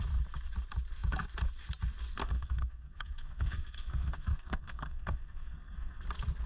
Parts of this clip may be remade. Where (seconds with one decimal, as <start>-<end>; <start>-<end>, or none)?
2.2-6.0